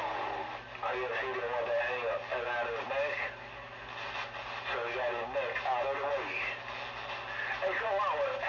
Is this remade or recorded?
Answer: recorded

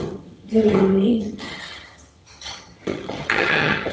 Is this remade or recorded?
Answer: remade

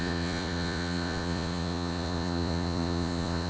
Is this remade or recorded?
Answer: remade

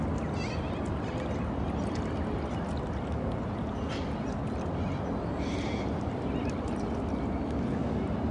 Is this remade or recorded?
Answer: recorded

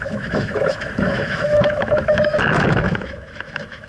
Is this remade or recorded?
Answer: remade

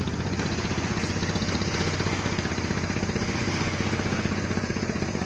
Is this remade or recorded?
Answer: remade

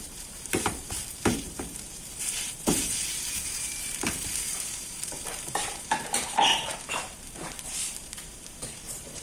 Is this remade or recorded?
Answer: remade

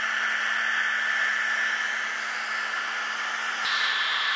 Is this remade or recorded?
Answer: recorded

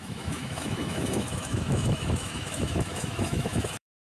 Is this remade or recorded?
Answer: remade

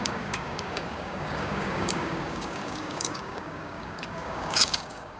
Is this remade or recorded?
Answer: remade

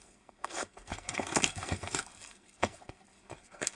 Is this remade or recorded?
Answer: remade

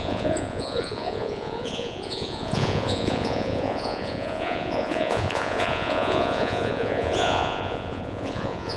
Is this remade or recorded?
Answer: remade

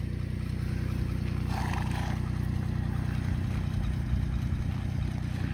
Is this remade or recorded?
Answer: recorded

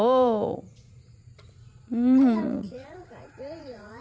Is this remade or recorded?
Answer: remade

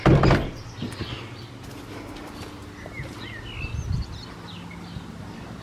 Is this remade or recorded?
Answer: recorded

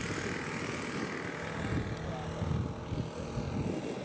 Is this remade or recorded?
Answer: recorded